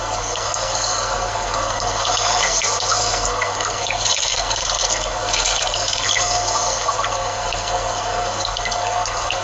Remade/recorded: remade